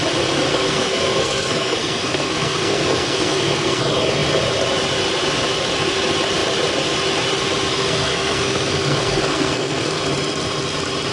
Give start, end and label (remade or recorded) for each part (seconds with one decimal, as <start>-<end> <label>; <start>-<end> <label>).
0.0-0.5 recorded; 0.5-3.8 remade; 3.8-7.7 recorded; 7.7-10.0 remade; 10.0-11.1 recorded